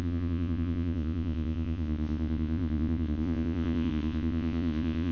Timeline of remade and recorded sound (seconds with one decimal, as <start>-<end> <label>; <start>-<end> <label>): 0.0-5.1 remade